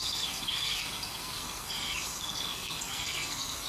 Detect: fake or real fake